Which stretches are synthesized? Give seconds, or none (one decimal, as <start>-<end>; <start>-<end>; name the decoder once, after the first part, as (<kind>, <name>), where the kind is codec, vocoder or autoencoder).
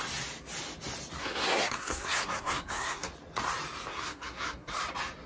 1.2-3.1 (codec, SNAC); 3.9-4.8